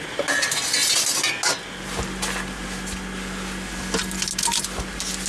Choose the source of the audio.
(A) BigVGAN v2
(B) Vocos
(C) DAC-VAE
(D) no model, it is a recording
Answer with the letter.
D